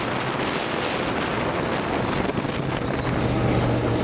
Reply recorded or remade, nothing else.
recorded